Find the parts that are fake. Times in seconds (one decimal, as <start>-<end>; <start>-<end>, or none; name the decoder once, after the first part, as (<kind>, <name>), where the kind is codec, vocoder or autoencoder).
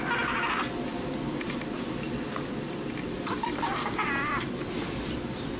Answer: none